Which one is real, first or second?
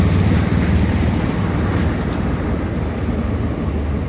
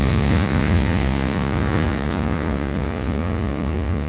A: first